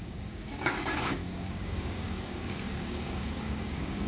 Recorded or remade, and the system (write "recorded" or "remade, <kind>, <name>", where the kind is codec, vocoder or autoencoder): remade, codec, DAC